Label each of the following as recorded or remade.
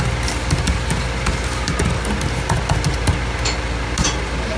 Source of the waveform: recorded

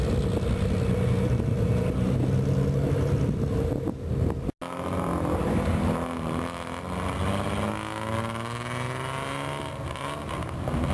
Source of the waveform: recorded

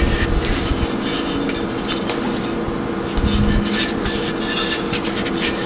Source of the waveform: recorded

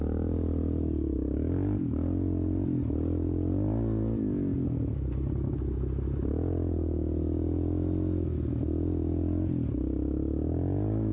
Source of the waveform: recorded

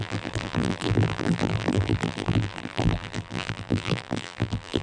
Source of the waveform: remade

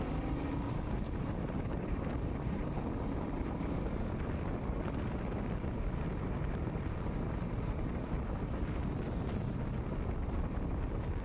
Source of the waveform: recorded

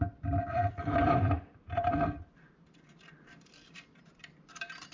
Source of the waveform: remade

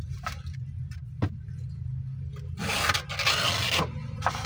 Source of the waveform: recorded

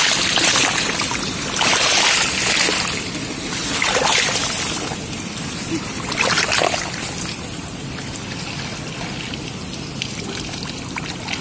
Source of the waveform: recorded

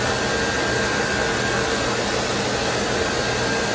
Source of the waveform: recorded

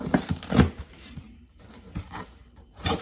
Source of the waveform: remade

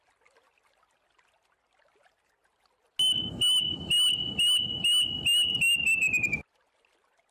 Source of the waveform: recorded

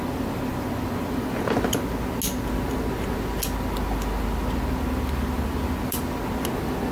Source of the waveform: recorded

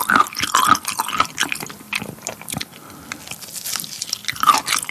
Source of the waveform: recorded